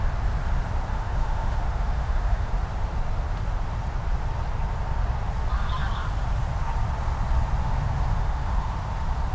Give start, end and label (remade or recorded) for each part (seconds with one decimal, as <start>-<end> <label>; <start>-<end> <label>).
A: 0.0-0.9 recorded; 0.9-2.5 remade; 2.5-7.6 recorded; 7.6-8.8 remade; 8.8-9.3 recorded